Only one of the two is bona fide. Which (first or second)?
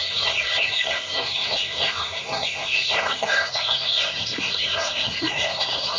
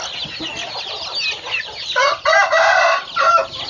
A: second